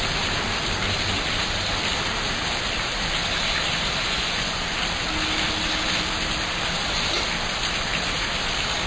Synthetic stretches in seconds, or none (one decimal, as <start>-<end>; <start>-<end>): 4.0-4.6